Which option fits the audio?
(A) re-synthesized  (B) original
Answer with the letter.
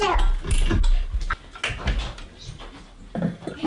B